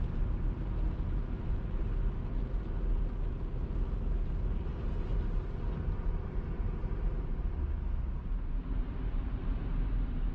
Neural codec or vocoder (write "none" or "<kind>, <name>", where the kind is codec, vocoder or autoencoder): none